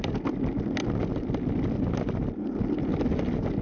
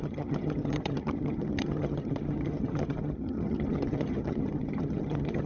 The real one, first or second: first